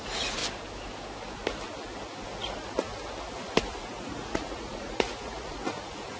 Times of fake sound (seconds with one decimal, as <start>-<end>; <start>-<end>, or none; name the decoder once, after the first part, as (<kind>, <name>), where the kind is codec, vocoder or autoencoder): 0.0-0.4 (vocoder, Vocos); 3.6-6.2